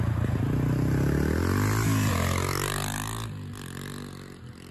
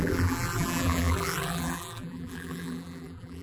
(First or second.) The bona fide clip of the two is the first